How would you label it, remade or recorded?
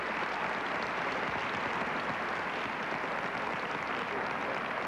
recorded